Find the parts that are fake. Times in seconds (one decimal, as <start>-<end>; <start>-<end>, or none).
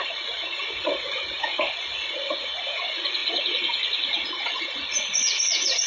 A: 0.0-5.9